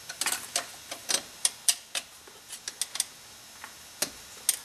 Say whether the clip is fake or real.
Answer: real